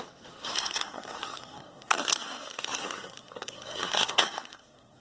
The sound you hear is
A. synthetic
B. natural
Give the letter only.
A